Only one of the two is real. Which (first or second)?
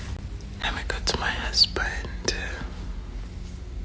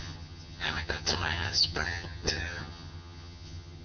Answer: first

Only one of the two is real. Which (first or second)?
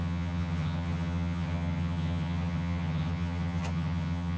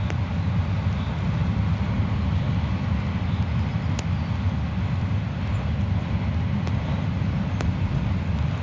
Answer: second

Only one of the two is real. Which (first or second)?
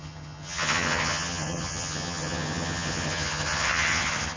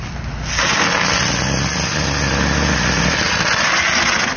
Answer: second